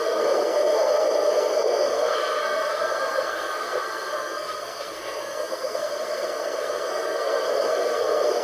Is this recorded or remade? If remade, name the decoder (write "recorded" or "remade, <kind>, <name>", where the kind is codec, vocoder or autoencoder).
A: remade, codec, SNAC